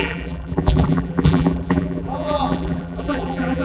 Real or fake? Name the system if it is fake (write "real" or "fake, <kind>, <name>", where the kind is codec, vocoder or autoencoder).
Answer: fake, vocoder, BigVGAN v2